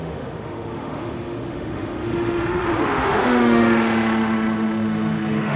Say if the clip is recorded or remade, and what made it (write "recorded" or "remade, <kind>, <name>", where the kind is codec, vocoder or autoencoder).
remade, autoencoder, DAC-VAE